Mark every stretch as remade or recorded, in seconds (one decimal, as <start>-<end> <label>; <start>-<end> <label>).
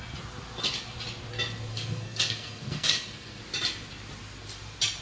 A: 0.0-1.7 recorded; 1.7-3.4 remade; 3.4-5.0 recorded